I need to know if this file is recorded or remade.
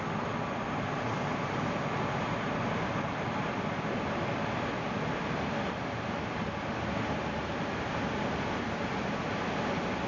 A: recorded